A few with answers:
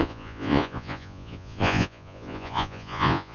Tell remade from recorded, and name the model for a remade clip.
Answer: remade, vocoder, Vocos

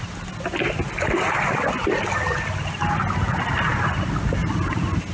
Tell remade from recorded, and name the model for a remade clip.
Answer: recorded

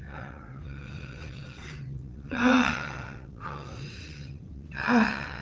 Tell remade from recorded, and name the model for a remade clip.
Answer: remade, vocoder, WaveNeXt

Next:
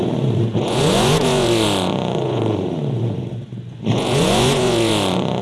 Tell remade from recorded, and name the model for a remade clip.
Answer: remade, vocoder, Vocos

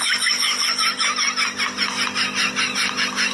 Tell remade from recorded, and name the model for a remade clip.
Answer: recorded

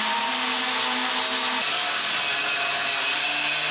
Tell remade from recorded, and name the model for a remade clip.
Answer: recorded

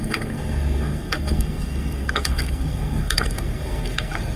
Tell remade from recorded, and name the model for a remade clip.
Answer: remade, codec, SNAC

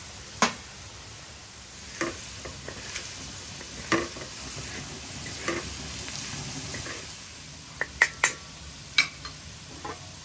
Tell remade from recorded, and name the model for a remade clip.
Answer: recorded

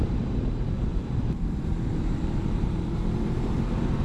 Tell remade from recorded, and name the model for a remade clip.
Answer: remade, vocoder, BigVGAN v2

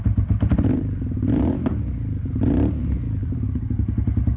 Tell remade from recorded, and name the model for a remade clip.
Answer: remade, vocoder, BigVGAN v2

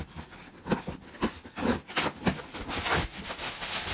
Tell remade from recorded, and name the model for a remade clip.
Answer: recorded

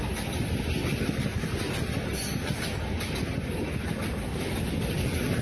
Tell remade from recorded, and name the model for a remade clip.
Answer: recorded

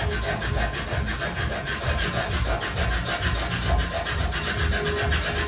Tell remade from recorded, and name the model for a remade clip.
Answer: recorded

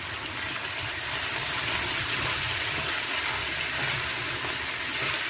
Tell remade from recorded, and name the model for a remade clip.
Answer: recorded